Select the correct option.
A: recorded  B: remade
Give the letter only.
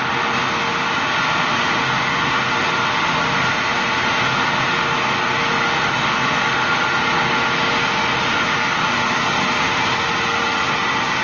A